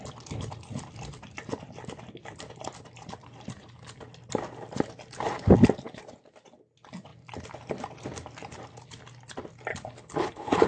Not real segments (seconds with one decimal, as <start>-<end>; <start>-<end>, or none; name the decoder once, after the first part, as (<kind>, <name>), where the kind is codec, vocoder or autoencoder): 9.7-10.7 (codec, HILCodec)